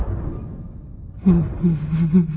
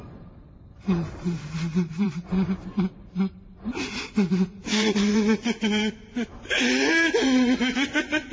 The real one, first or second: first